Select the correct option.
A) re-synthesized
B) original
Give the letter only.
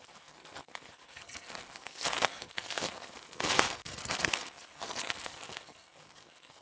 A